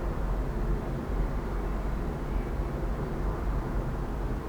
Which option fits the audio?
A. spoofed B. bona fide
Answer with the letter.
B